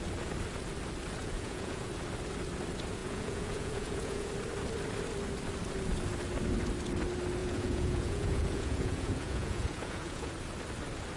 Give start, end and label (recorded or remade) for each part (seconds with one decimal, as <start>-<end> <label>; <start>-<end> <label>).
0.0-1.2 recorded; 1.2-1.9 remade; 1.9-3.0 recorded; 3.0-4.3 remade; 4.3-7.4 recorded; 7.4-10.3 remade; 10.3-11.2 recorded